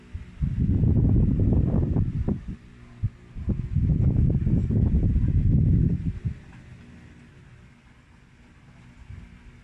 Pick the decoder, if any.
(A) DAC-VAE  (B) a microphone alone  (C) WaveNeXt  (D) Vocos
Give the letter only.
B